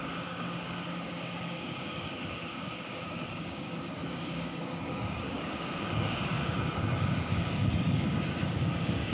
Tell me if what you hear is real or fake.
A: fake